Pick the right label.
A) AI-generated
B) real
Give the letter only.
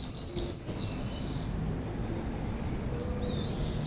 B